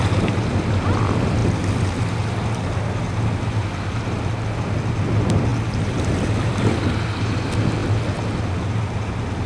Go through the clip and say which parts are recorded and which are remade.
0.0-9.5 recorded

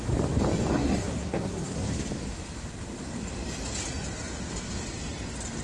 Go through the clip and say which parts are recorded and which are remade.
0.0-0.7 recorded; 0.7-1.9 remade; 1.9-5.6 recorded

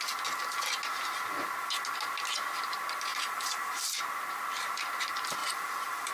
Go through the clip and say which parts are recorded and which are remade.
0.0-3.1 recorded; 3.1-4.0 remade; 4.0-5.4 recorded; 5.4-6.1 remade

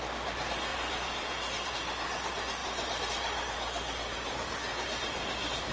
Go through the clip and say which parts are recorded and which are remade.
0.0-0.7 recorded; 0.7-1.7 remade; 1.7-2.6 recorded; 2.6-3.1 remade; 3.1-4.7 recorded; 4.7-5.7 remade

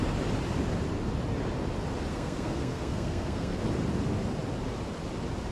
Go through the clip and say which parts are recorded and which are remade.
0.0-2.1 recorded; 2.1-3.6 remade; 3.6-5.5 recorded

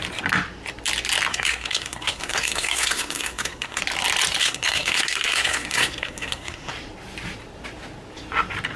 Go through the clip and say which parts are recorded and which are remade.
0.0-1.3 recorded; 1.3-3.8 remade; 3.8-4.4 recorded; 4.4-6.7 remade; 6.7-8.8 recorded

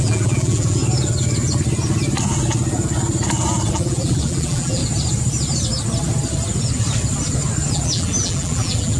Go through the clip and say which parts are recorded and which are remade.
0.0-0.8 remade; 0.8-3.7 recorded; 3.7-4.8 remade; 4.8-7.7 recorded; 7.7-9.0 remade